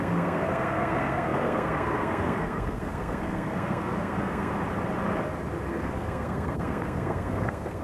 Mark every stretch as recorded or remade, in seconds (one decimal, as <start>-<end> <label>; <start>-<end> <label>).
0.0-4.5 remade; 4.5-5.7 recorded; 5.7-7.8 remade